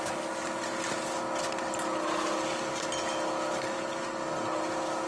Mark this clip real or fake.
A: real